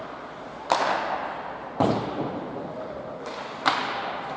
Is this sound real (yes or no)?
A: yes